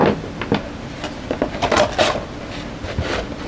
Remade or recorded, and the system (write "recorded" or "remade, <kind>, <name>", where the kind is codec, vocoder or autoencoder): recorded